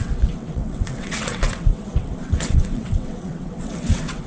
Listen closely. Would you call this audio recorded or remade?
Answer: remade